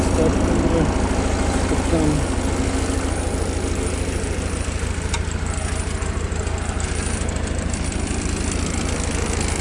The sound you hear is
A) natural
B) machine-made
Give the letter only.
A